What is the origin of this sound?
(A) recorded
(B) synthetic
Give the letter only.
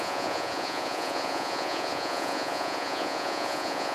B